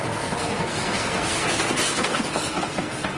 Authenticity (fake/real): fake